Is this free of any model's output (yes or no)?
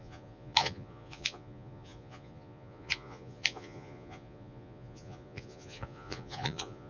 no